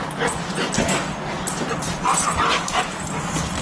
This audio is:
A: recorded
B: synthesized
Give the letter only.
A